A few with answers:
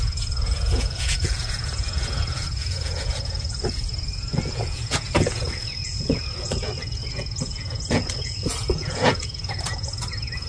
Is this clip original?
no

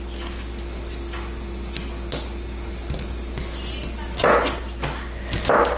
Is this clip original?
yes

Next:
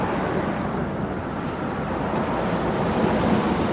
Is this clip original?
yes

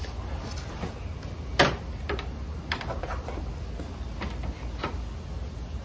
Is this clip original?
yes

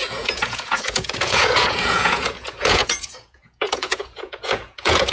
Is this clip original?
no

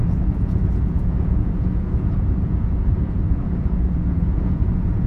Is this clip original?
no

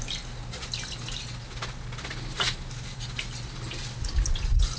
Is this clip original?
yes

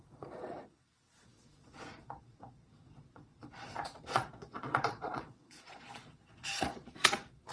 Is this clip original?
no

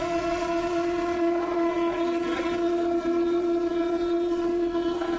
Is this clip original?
no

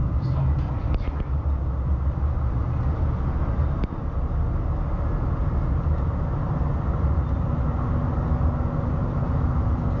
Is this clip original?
yes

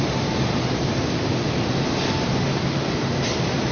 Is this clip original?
yes